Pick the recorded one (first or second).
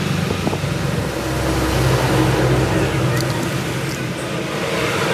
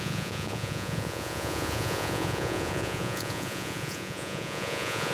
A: first